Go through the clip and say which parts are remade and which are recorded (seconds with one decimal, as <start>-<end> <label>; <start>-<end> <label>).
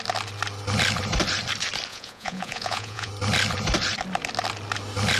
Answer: 0.0-1.9 recorded; 1.9-3.1 remade; 3.1-5.2 recorded